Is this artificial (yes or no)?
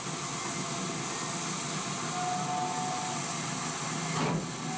no